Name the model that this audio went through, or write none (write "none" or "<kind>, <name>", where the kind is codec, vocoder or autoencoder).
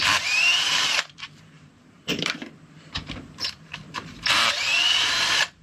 vocoder, BigVGAN v2